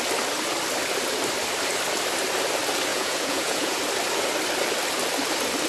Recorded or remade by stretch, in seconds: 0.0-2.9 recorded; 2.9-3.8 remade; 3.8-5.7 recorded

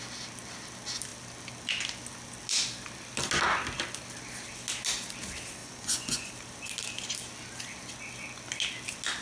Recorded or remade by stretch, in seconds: 0.0-5.6 recorded; 5.6-6.3 remade; 6.3-9.2 recorded